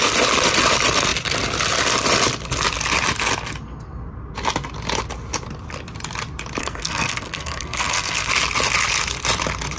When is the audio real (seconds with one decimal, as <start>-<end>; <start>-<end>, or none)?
0.0-6.6; 8.3-9.8